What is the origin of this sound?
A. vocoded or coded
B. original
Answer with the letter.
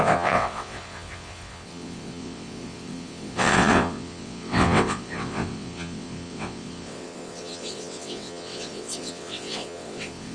A